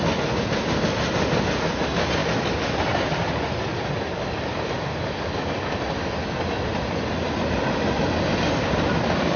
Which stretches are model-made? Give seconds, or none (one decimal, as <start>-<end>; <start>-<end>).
4.5-5.7